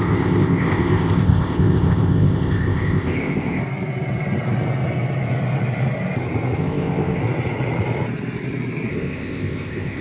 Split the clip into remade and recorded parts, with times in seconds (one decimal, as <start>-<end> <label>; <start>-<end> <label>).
0.0-3.6 remade; 3.6-6.6 recorded; 6.6-7.2 remade; 7.2-8.9 recorded; 8.9-10.0 remade